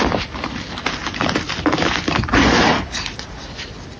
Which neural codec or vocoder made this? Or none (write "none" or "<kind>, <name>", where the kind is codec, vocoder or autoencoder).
none